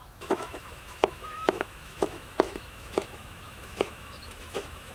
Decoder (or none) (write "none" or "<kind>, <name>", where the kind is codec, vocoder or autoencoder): autoencoder, DAC-VAE